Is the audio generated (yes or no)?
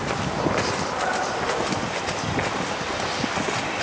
no